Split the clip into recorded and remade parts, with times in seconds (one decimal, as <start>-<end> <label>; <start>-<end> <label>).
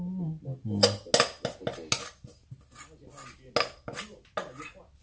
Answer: 0.0-5.0 recorded